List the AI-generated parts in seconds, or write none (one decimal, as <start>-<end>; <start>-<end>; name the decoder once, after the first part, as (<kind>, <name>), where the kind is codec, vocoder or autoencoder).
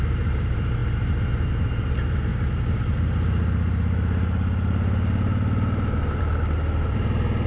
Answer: none